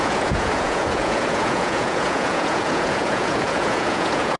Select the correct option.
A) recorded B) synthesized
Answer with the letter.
B